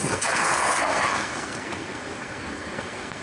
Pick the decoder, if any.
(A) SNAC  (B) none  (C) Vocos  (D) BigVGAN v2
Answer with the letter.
A